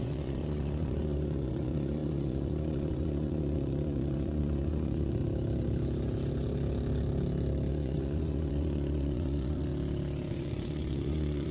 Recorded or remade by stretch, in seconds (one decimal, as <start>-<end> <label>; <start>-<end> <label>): 0.0-5.2 remade; 5.2-7.7 recorded; 7.7-9.7 remade; 9.7-10.3 recorded; 10.3-11.5 remade